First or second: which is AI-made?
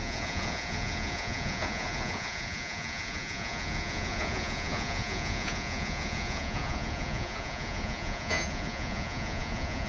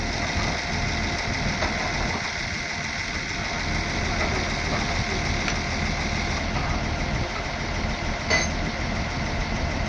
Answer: first